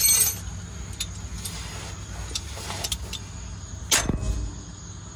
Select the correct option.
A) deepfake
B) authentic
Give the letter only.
B